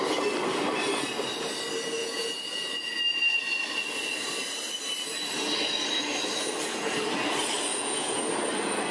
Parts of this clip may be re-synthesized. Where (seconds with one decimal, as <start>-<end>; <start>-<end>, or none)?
2.0-3.0; 7.7-8.3